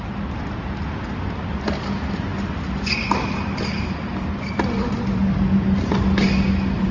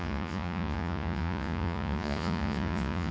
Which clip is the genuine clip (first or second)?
first